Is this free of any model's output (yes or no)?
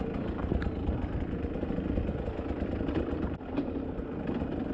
no